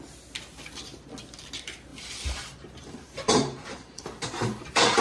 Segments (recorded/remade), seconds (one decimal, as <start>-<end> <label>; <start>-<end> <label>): 0.0-1.9 recorded; 1.9-5.0 remade